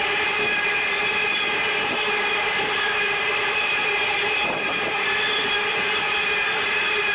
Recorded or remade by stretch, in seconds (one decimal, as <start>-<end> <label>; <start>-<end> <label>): 0.0-7.1 recorded

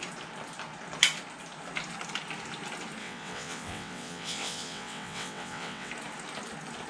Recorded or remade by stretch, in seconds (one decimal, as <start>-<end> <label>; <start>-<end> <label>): 0.0-3.0 recorded; 3.0-5.9 remade; 5.9-6.9 recorded

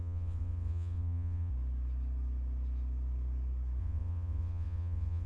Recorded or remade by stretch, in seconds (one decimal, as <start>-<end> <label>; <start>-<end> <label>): 0.0-1.5 remade; 1.5-3.8 recorded; 3.8-5.3 remade